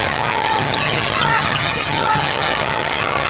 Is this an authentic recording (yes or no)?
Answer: no